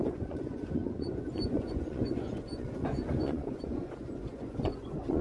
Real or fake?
fake